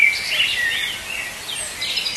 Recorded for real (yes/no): yes